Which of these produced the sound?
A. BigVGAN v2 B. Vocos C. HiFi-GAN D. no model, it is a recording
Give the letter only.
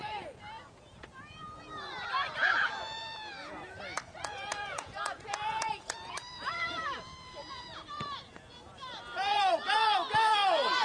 B